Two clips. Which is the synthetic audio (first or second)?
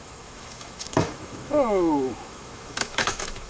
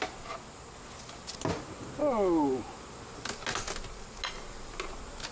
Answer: first